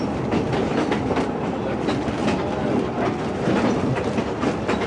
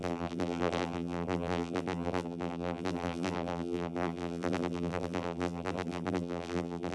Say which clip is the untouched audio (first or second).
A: first